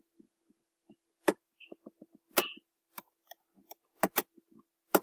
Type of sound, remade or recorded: recorded